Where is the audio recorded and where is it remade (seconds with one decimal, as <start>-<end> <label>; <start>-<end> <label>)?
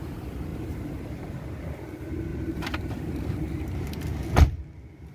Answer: 0.0-0.5 recorded; 0.5-1.1 remade; 1.1-2.3 recorded; 2.3-3.6 remade; 3.6-5.1 recorded